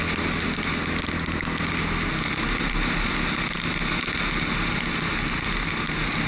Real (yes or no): yes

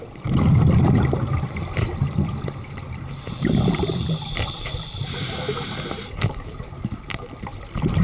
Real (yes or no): no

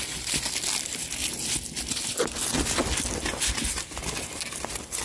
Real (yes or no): yes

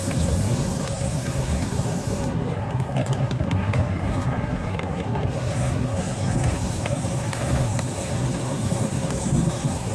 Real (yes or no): no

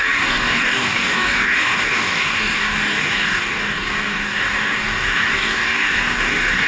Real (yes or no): no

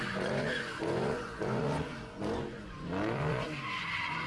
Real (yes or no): no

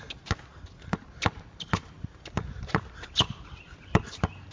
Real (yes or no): yes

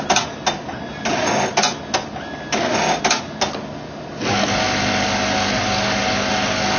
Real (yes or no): yes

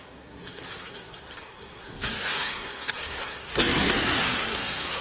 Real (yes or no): no